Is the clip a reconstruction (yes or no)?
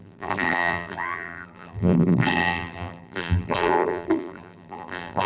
yes